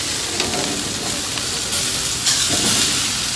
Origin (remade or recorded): recorded